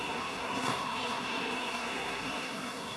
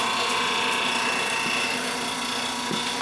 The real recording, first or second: second